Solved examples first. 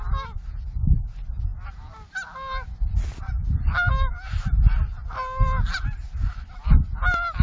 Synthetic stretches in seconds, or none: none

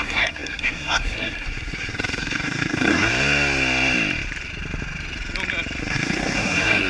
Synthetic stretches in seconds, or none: 0.0-3.1 (codec, SNAC); 5.8-6.9

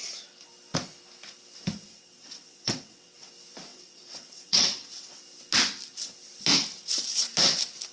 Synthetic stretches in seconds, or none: 1.9-3.3 (vocoder, WaveNeXt); 3.7-5.2